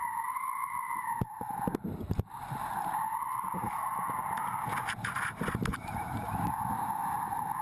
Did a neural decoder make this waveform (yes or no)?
no